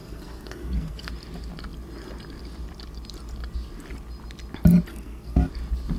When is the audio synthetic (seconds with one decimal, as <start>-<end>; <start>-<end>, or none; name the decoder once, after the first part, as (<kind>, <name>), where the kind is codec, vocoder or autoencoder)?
0.0-1.1 (codec, SNAC); 4.9-5.5